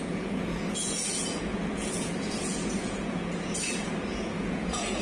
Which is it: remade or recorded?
remade